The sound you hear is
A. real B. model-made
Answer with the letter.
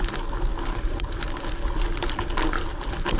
A